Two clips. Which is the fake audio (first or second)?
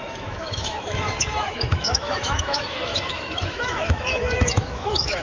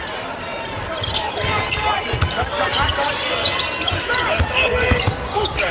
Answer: first